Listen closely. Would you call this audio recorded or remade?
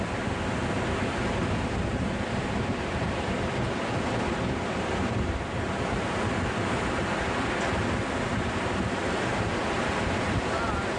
remade